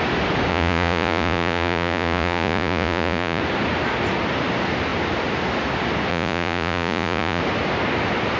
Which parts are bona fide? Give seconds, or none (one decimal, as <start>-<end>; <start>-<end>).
0.0-0.5; 3.4-6.1; 7.4-8.4